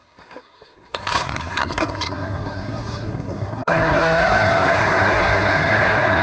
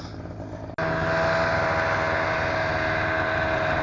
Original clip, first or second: second